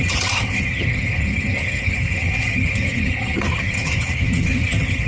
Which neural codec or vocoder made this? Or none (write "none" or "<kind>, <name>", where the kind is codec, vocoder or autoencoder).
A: vocoder, HiFi-GAN